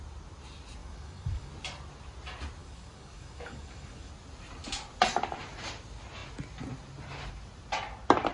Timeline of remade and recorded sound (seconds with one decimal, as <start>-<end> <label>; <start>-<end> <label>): 0.0-0.8 recorded; 0.8-1.5 remade; 1.5-2.6 recorded; 2.6-4.1 remade; 4.1-8.3 recorded

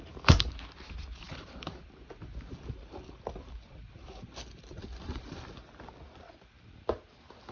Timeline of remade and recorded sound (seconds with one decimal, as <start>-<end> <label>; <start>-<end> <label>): 0.0-1.1 recorded; 1.1-5.4 remade; 5.4-7.5 recorded

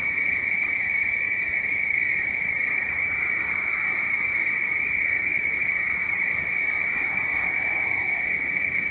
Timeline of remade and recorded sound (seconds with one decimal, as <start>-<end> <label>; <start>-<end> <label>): 0.0-8.9 remade

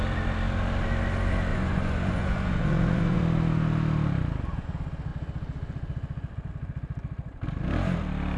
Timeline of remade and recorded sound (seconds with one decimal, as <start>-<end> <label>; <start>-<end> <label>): 0.0-1.5 recorded; 1.5-3.2 remade; 3.2-8.4 recorded

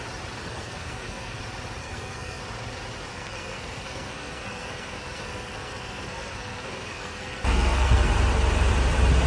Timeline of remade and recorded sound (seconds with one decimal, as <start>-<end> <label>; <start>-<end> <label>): 0.0-0.4 recorded; 0.4-1.4 remade; 1.4-1.8 recorded; 1.8-2.4 remade; 2.4-3.1 recorded; 3.1-8.1 remade; 8.1-9.3 recorded

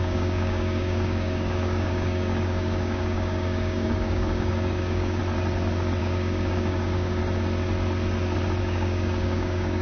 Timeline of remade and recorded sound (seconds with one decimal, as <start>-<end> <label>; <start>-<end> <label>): 0.0-5.2 remade; 5.2-6.0 recorded; 6.0-7.2 remade; 7.2-8.6 recorded; 8.6-9.8 remade